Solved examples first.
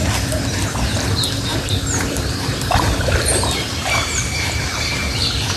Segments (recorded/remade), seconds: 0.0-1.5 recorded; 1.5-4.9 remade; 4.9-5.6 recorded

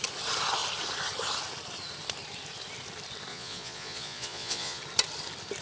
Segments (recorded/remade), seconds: 0.0-3.3 recorded; 3.3-4.8 remade; 4.8-5.6 recorded

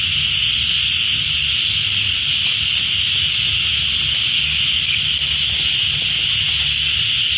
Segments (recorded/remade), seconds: 0.0-7.4 recorded

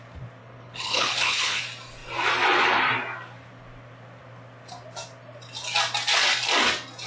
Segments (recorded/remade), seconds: 0.0-0.4 recorded; 0.4-1.6 remade; 1.6-7.1 recorded

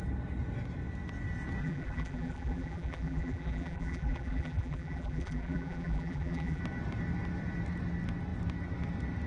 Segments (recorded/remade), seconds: 0.0-1.6 recorded; 1.6-6.6 remade; 6.6-9.3 recorded

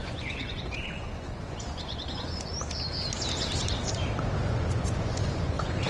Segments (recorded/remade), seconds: 0.0-2.5 remade; 2.5-4.4 recorded; 4.4-5.9 remade

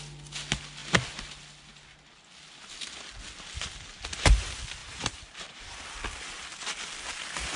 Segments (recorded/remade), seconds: 0.0-4.8 recorded; 4.8-6.0 remade; 6.0-7.6 recorded